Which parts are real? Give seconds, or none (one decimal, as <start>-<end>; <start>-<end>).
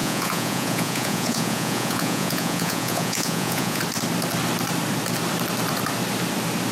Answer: 3.8-6.7